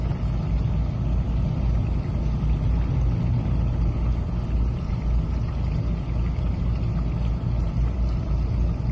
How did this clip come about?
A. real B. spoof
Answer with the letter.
A